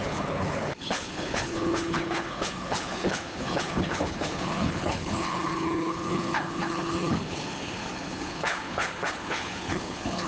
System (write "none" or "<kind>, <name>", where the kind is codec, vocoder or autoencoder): codec, HILCodec